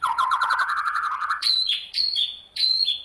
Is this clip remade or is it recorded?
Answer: remade